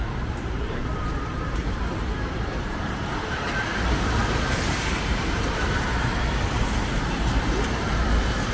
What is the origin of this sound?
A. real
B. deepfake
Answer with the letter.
B